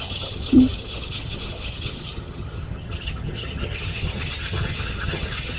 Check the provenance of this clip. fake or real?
fake